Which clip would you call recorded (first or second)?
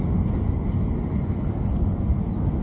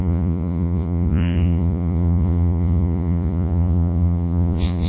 first